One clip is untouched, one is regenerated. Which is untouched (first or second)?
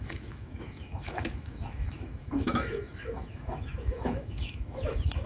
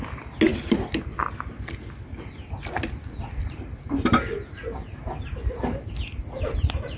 second